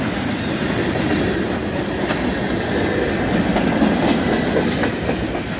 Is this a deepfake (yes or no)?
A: no